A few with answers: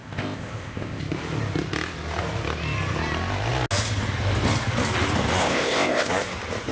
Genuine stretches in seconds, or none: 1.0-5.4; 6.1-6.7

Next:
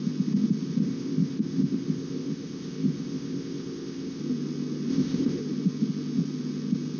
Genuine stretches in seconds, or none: 0.0-0.8; 4.2-4.9; 5.4-7.0